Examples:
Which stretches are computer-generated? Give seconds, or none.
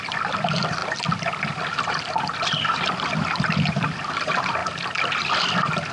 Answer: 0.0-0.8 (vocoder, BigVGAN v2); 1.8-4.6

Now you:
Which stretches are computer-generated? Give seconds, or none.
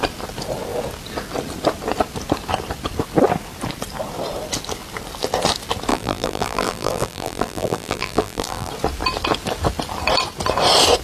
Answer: 5.9-8.7 (vocoder, BigVGAN v2)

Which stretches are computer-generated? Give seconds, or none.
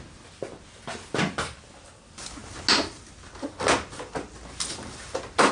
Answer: none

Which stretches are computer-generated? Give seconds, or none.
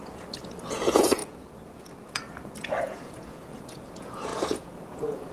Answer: 0.0-5.3 (vocoder, Vocos)